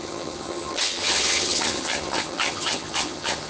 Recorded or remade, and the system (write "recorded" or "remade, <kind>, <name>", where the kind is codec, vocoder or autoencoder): remade, vocoder, HiFi-GAN